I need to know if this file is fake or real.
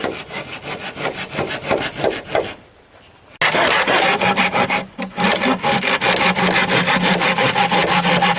real